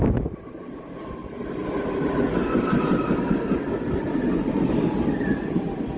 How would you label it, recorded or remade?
recorded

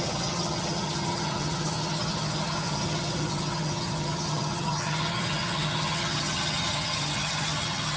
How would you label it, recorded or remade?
remade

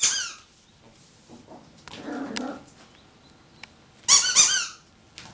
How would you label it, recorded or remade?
recorded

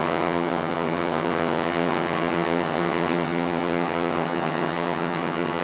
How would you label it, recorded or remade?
remade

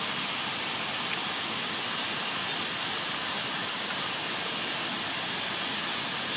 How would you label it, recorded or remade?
recorded